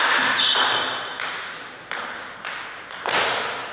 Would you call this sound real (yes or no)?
yes